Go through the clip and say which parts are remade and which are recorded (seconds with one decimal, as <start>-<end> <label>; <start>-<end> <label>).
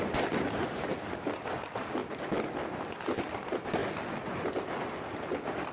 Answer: 0.0-5.7 recorded